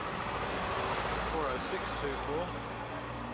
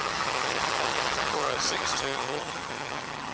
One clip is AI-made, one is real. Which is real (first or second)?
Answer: first